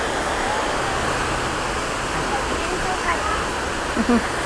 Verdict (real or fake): real